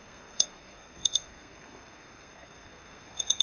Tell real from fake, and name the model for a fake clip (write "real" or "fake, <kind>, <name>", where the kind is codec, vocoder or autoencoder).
fake, codec, SNAC